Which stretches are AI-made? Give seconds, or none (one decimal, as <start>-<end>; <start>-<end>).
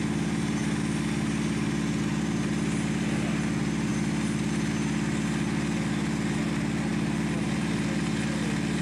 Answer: none